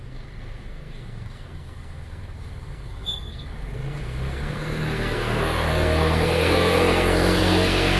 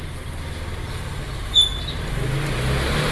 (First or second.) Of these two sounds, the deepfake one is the first